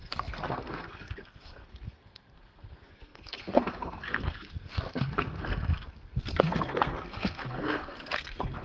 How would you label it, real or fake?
fake